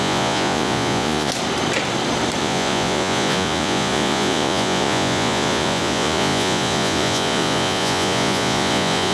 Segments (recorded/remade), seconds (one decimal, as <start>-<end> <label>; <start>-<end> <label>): 0.0-1.3 remade; 1.3-2.4 recorded; 2.4-9.1 remade